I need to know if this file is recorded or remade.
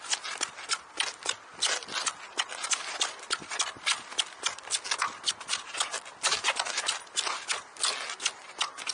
recorded